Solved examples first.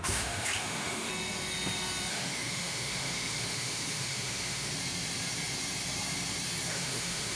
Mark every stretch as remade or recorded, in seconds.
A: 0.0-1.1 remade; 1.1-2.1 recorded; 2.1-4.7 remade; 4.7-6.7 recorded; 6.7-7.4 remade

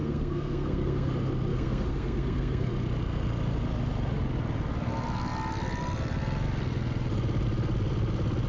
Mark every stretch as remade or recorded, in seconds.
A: 0.0-1.1 remade; 1.1-1.5 recorded; 1.5-2.7 remade; 2.7-8.5 recorded

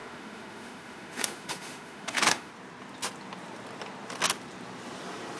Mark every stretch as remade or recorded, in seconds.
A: 0.0-2.5 remade; 2.5-5.4 recorded

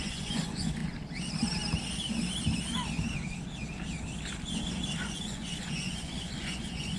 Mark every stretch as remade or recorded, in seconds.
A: 0.0-0.8 remade; 0.8-5.0 recorded; 5.0-7.0 remade

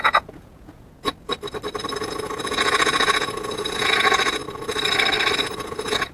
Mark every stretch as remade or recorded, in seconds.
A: 0.0-1.1 remade; 1.1-2.1 recorded; 2.1-4.4 remade; 4.4-5.4 recorded; 5.4-6.1 remade

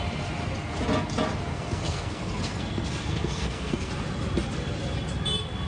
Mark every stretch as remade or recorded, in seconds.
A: 0.0-1.5 recorded; 1.5-3.9 remade; 3.9-5.7 recorded